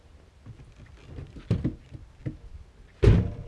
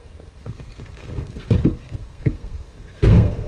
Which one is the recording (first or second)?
first